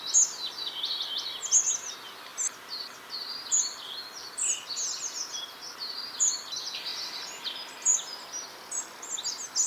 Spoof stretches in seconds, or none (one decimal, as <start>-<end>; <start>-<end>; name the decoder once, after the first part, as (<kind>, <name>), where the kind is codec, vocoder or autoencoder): none